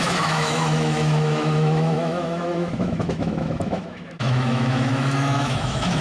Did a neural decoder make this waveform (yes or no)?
yes